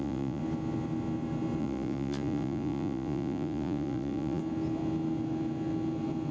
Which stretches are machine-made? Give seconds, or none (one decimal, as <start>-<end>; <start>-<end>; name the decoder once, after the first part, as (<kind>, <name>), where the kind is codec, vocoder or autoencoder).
0.0-0.4 (vocoder, Vocos); 1.6-4.4